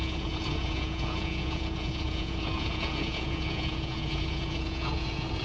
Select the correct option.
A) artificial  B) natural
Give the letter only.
A